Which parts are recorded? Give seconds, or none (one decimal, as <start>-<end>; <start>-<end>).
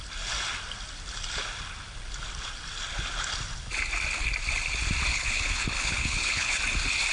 0.0-5.1; 6.6-7.1